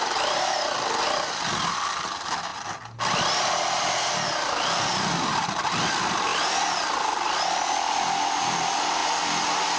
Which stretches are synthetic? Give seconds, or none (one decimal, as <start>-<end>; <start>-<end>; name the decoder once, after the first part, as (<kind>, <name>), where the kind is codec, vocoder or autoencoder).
0.0-2.5 (vocoder, BigVGAN v2); 3.9-9.8